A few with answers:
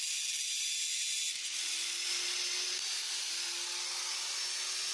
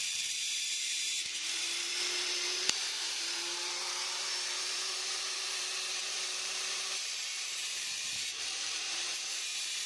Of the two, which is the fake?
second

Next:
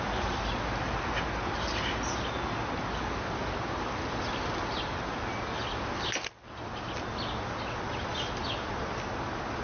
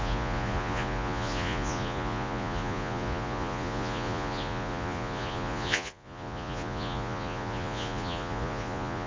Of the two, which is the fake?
second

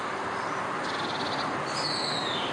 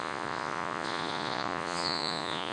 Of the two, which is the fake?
second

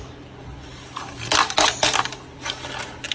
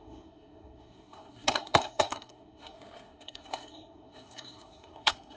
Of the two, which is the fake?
second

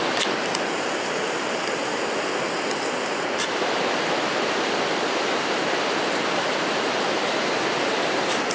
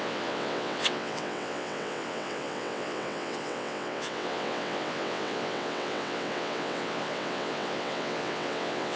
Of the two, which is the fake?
second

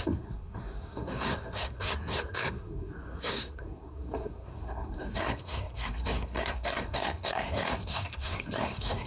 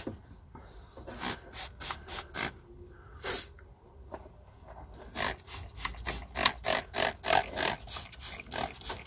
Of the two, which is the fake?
first